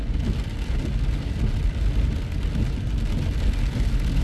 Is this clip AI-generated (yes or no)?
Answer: no